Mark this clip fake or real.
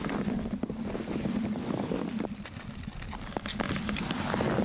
real